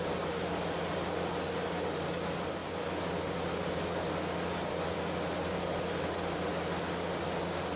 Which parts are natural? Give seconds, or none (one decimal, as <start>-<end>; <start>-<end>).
0.0-7.8